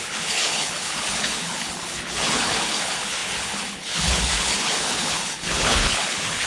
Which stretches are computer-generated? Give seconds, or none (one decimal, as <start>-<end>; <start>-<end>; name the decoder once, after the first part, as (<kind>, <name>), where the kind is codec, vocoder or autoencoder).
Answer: 0.0-6.5 (codec, HILCodec)